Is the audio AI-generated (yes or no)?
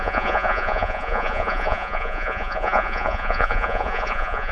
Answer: yes